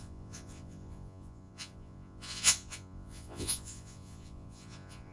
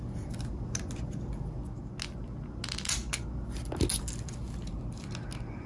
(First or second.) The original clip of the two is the second